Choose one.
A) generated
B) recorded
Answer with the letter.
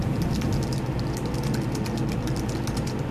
B